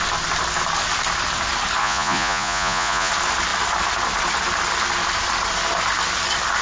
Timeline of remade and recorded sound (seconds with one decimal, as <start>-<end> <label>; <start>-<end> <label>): 0.0-1.8 recorded; 1.8-3.1 remade; 3.1-6.6 recorded